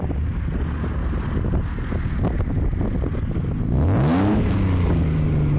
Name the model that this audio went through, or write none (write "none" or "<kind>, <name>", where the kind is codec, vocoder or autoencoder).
none